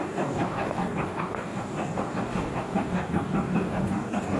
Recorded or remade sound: remade